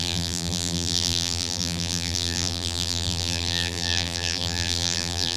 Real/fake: fake